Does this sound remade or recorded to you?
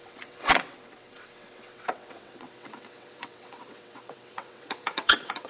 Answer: remade